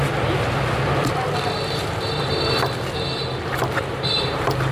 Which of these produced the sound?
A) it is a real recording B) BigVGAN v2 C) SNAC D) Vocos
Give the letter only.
A